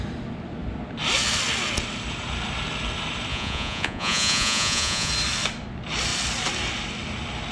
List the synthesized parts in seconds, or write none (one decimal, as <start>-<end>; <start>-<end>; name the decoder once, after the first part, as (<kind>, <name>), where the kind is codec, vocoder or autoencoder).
3.3-5.1 (vocoder, Vocos)